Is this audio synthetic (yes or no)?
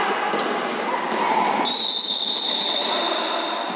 no